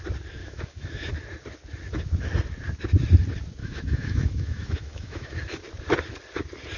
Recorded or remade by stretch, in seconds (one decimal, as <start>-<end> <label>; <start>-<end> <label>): 0.0-0.4 recorded; 0.4-1.1 remade; 1.1-3.6 recorded; 3.6-5.4 remade; 5.4-6.8 recorded